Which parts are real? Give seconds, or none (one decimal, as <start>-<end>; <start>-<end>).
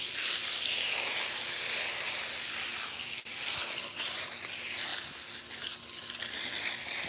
0.0-7.1